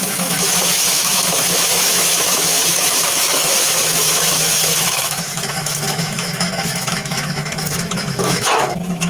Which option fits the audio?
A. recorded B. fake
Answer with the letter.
B